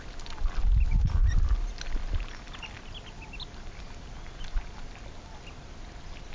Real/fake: real